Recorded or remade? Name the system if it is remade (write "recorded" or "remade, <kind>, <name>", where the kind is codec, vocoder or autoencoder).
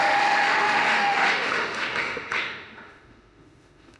remade, autoencoder, DAC-VAE